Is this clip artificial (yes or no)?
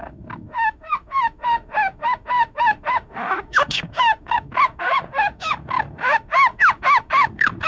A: yes